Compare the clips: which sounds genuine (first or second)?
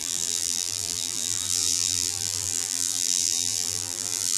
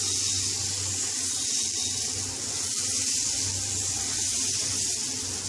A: second